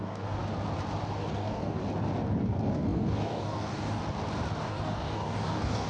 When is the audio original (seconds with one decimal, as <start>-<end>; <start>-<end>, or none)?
0.4-1.3; 1.8-2.4; 4.0-4.6